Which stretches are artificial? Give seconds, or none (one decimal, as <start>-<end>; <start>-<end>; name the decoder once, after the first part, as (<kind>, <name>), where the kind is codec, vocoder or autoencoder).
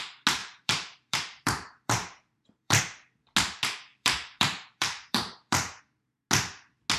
0.4-2.8 (vocoder, BigVGAN v2); 3.9-5.8